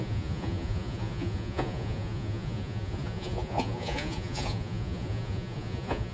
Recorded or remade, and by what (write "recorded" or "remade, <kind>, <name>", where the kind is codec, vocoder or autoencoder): remade, vocoder, Vocos